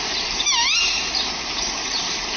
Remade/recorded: remade